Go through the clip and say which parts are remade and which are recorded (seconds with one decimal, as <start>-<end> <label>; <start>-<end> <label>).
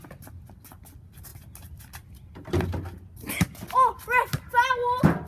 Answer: 0.0-5.3 recorded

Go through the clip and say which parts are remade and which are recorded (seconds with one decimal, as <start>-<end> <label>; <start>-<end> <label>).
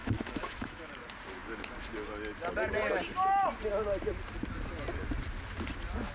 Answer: 0.0-0.9 remade; 0.9-6.1 recorded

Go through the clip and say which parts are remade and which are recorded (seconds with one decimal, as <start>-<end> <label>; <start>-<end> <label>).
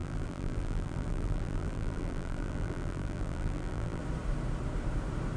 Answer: 0.0-4.0 remade; 4.0-5.4 recorded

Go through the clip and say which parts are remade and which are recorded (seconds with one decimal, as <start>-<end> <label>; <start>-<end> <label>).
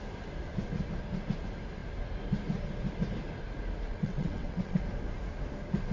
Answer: 0.0-3.9 recorded; 3.9-4.8 remade; 4.8-5.9 recorded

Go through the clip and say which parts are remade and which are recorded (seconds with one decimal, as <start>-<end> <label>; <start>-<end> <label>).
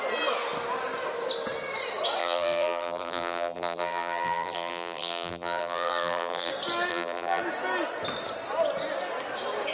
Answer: 0.0-2.2 recorded; 2.2-6.5 remade; 6.5-6.9 recorded; 6.9-7.4 remade; 7.4-9.7 recorded